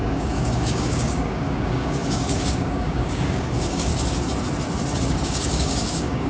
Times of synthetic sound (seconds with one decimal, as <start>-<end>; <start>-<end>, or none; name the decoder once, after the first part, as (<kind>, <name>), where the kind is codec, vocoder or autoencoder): 0.0-3.9 (codec, DAC); 5.0-6.3